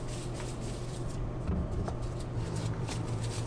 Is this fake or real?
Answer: fake